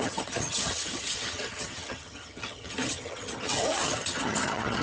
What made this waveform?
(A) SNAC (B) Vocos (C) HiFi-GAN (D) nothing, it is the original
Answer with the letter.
C